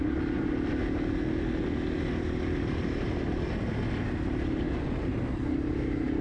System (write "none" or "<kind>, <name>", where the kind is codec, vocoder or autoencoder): none